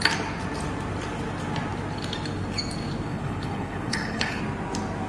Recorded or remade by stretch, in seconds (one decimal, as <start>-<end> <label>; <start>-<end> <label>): 0.0-3.1 recorded; 3.1-4.4 remade; 4.4-5.1 recorded